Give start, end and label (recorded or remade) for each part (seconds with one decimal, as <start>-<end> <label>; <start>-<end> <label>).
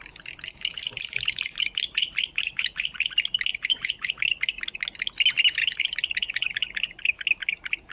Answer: 0.0-0.7 recorded; 0.7-3.1 remade; 3.1-3.5 recorded; 3.5-4.1 remade; 4.1-5.6 recorded; 5.6-7.0 remade; 7.0-7.9 recorded